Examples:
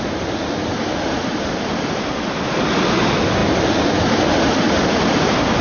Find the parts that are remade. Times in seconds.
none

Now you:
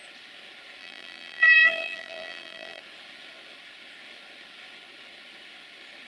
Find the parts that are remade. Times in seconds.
0.8-2.8